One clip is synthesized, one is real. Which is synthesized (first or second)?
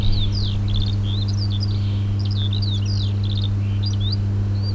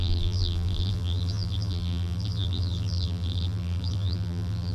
second